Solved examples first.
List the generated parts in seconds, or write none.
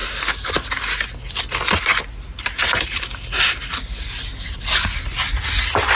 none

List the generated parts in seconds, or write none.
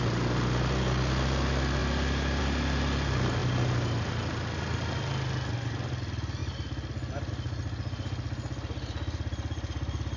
none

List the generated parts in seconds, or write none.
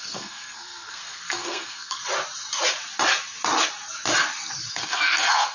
0.0-2.0 (codec, SNAC); 4.7-5.5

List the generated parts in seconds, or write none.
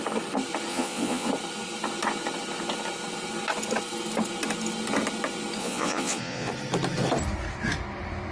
0.7-1.3 (vocoder, Vocos); 5.6-6.5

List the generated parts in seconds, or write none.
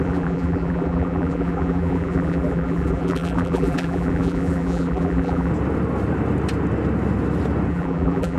0.0-5.5 (vocoder, BigVGAN v2); 7.7-8.4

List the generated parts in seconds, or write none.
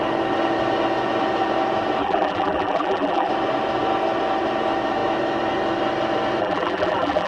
2.0-3.3 (vocoder, BigVGAN v2); 6.4-7.3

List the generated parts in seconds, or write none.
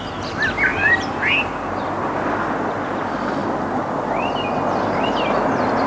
none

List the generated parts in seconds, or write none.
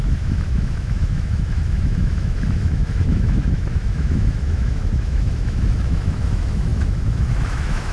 0.0-7.9 (autoencoder, DAC-VAE)